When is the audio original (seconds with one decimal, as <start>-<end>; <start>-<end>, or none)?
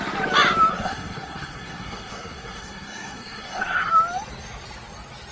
0.0-0.7; 3.9-5.3